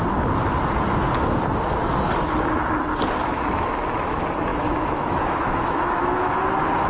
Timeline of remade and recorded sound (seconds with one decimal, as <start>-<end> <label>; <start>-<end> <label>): 0.0-4.5 recorded; 4.5-6.4 remade; 6.4-6.9 recorded